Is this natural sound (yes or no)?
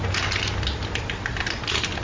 yes